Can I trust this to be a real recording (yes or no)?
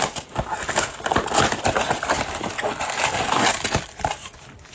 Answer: yes